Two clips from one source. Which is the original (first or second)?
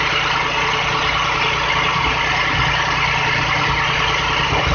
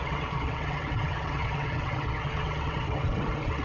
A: first